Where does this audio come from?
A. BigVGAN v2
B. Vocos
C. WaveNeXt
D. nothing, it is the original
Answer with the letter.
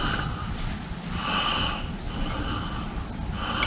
D